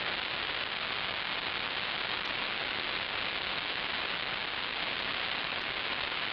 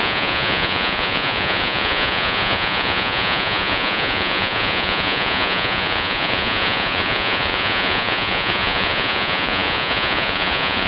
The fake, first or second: second